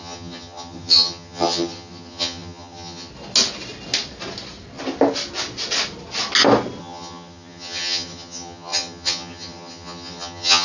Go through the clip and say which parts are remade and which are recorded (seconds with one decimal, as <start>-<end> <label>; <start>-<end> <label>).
0.0-3.1 remade; 3.1-6.8 recorded; 6.8-10.6 remade